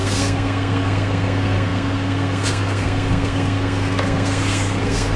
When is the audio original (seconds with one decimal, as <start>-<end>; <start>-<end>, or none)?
none

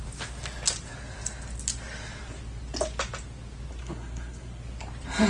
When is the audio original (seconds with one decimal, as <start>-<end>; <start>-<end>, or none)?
0.0-3.8; 4.6-5.3

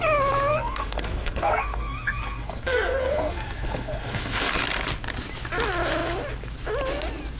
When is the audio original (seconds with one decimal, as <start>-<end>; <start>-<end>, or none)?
0.0-0.5; 4.5-7.4

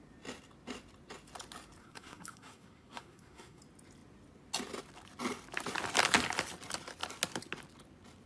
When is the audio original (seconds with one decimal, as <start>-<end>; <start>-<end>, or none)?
0.0-1.8; 3.6-8.3

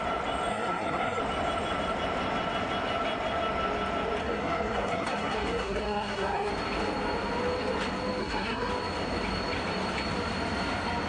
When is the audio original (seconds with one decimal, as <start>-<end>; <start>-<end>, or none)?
0.0-0.5; 1.2-4.2; 6.5-8.2; 8.7-11.1